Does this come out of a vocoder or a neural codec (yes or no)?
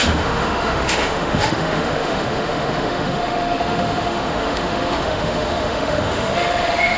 yes